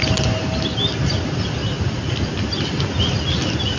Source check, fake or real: real